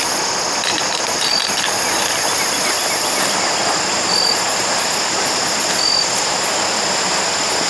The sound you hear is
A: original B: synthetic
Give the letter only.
A